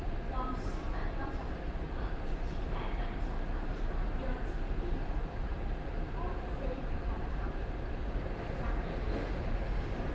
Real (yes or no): no